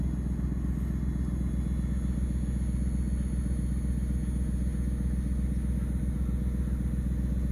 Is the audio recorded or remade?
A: recorded